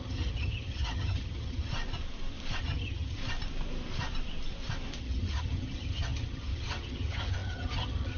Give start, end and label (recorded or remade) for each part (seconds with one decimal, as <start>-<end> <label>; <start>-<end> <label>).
0.0-1.7 remade; 1.7-2.6 recorded; 2.6-3.2 remade; 3.2-5.0 recorded; 5.0-8.2 remade